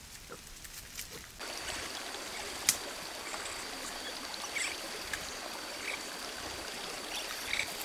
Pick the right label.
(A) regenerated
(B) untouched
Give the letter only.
B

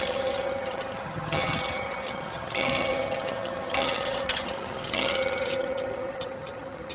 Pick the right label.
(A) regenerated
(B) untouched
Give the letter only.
A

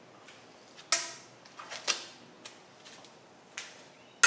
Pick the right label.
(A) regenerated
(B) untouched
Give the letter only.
B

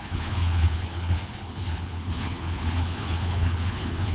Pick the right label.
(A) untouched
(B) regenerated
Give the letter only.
B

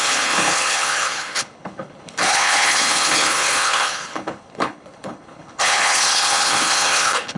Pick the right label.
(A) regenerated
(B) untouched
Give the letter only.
A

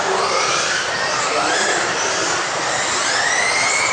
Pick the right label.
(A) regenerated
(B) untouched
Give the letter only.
B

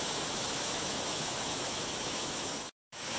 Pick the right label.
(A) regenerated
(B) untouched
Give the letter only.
A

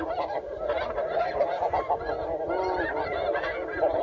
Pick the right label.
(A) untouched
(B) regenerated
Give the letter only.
A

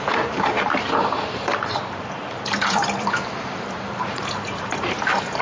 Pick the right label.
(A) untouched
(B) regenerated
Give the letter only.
B